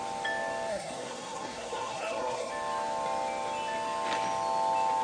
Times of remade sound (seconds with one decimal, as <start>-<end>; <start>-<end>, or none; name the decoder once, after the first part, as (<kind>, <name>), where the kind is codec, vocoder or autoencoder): 0.7-2.5 (codec, SNAC)